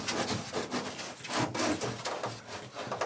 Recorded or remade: recorded